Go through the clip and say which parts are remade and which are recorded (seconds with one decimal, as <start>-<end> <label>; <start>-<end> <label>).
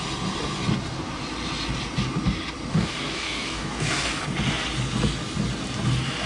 0.0-2.7 recorded; 2.7-4.2 remade; 4.2-6.3 recorded